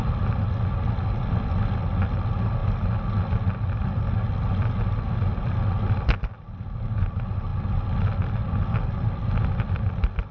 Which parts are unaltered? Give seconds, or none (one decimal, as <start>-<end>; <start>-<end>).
0.0-10.3